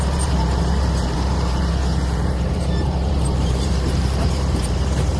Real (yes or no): no